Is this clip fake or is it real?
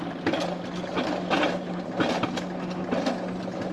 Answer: real